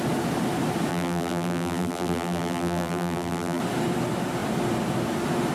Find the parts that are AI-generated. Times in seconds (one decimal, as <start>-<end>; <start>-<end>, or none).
0.9-3.6